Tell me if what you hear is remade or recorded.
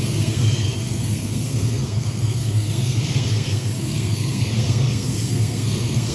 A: remade